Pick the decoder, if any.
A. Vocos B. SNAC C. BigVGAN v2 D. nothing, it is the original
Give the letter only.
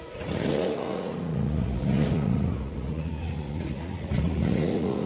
A